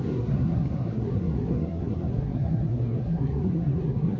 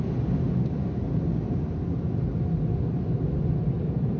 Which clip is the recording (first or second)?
second